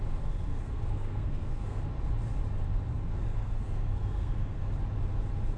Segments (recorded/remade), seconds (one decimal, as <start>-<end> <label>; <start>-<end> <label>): 0.0-0.5 recorded; 0.5-1.8 remade; 1.8-2.9 recorded; 2.9-4.7 remade; 4.7-5.6 recorded